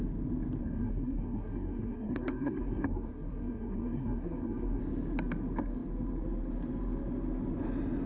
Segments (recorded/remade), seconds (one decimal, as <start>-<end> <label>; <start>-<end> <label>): 0.0-0.6 recorded; 0.6-4.8 remade; 4.8-8.1 recorded